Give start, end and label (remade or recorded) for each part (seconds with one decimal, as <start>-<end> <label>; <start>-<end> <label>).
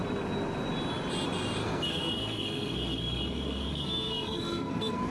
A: 0.0-1.6 recorded; 1.6-5.1 remade